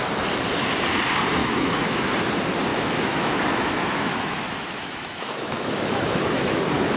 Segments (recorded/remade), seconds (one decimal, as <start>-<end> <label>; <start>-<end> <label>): 0.0-1.4 recorded; 1.4-2.1 remade; 2.1-2.7 recorded; 2.7-6.6 remade; 6.6-7.0 recorded